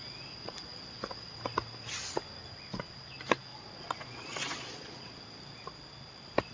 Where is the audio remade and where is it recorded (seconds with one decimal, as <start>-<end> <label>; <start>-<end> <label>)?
0.0-3.5 recorded; 3.5-5.2 remade; 5.2-6.5 recorded